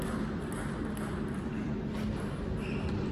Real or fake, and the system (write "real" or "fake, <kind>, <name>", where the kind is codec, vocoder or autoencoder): real